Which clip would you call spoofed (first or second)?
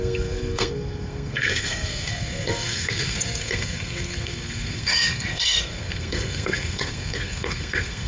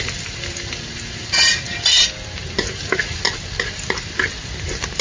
first